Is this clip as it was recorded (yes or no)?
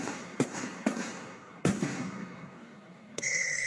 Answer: no